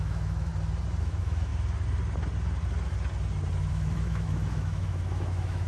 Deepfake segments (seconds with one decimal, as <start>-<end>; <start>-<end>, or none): 0.0-0.5; 1.0-1.5; 3.7-5.7